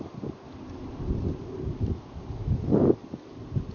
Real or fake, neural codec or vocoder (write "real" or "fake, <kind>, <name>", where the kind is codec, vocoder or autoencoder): real